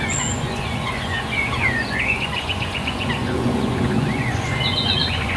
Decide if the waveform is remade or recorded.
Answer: remade